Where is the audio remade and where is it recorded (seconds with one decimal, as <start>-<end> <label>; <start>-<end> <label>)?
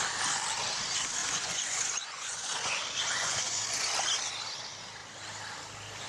0.0-1.2 recorded; 1.2-2.8 remade; 2.8-3.2 recorded; 3.2-3.9 remade; 3.9-6.1 recorded